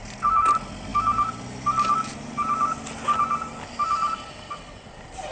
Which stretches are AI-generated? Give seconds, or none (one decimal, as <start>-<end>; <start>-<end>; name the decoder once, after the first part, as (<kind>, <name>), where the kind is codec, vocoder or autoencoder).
none

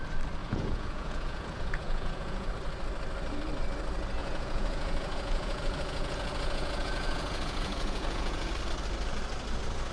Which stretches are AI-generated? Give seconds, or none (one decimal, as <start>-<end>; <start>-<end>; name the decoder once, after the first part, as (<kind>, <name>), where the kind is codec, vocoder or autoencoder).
0.4-2.5 (vocoder, Vocos); 4.2-8.5